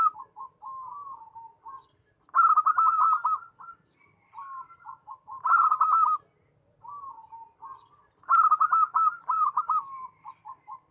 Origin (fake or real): real